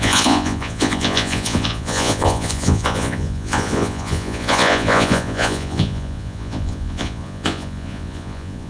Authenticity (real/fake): fake